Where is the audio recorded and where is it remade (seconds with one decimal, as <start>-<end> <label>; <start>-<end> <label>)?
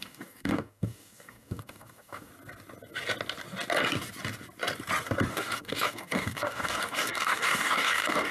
0.0-2.3 remade; 2.3-5.3 recorded; 5.3-8.3 remade